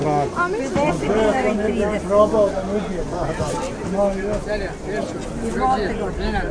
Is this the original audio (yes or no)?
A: yes